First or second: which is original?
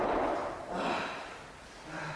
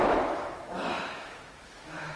first